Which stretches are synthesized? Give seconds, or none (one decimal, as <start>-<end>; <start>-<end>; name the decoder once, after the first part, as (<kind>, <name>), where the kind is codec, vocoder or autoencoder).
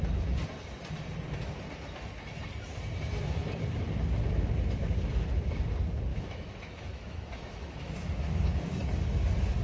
6.1-8.8 (autoencoder, DAC-VAE)